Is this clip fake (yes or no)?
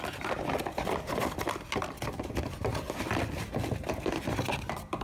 yes